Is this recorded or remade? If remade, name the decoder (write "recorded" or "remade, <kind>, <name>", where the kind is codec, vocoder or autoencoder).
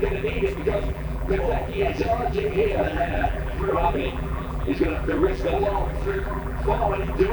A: remade, vocoder, BigVGAN v2